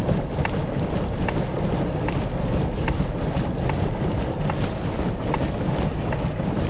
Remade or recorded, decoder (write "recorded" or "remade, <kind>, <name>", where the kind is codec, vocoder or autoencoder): recorded